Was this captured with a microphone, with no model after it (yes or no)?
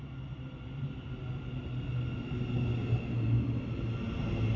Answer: yes